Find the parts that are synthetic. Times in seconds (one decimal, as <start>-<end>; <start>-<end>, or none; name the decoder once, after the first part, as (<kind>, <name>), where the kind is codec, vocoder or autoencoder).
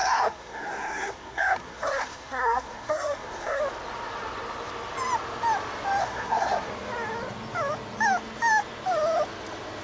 0.0-3.6 (codec, SNAC); 6.0-6.7